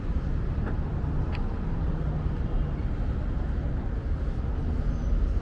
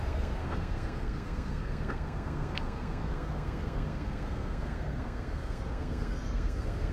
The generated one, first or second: second